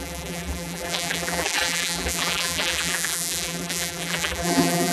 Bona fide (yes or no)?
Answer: no